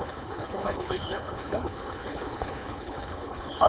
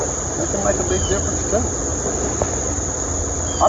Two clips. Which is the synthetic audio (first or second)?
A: first